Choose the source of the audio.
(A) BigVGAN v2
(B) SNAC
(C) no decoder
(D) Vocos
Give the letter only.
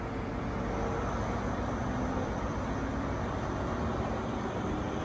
C